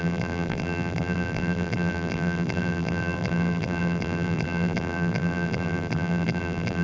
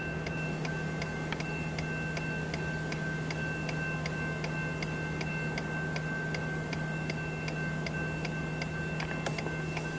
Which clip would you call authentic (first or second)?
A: second